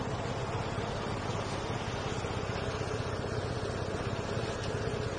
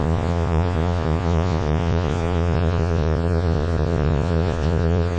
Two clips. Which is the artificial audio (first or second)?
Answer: second